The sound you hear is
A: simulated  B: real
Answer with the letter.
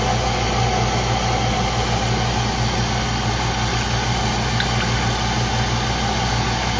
B